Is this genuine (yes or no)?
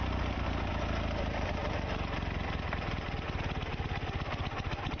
yes